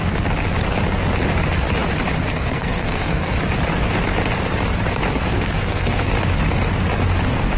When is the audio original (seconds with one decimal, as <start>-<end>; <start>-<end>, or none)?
0.0-2.2; 3.3-5.3; 6.1-7.6